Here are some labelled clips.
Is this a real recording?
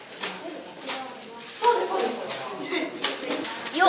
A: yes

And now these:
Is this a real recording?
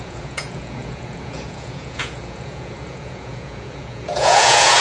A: no